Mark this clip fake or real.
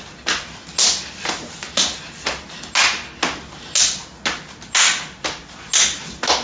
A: real